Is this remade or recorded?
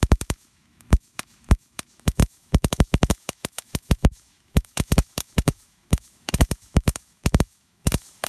remade